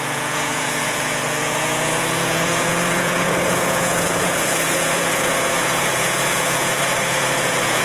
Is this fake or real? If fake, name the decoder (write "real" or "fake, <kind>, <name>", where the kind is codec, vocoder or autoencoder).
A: fake, vocoder, Vocos